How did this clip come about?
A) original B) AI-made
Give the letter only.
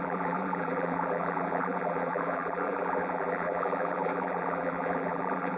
B